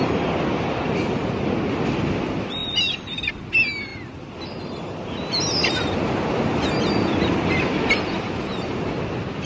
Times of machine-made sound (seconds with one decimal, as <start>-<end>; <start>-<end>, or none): none